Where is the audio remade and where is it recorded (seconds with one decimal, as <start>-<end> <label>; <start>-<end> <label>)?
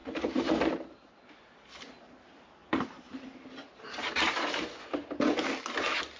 0.0-1.0 remade; 1.0-2.6 recorded; 2.6-4.3 remade; 4.3-6.2 recorded